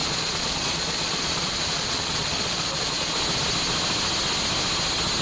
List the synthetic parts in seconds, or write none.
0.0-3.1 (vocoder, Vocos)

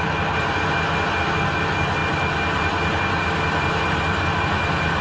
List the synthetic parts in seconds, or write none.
none